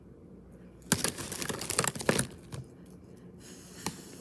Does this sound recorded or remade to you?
recorded